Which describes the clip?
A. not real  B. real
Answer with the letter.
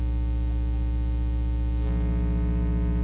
B